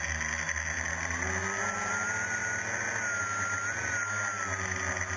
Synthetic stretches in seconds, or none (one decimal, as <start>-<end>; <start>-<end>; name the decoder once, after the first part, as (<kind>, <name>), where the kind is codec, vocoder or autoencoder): none